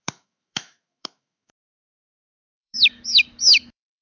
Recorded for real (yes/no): no